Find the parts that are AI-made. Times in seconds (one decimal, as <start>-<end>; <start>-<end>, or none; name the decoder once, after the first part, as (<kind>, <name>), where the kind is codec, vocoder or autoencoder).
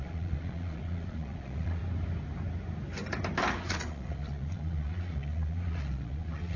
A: 0.0-1.8 (vocoder, Vocos); 3.6-6.6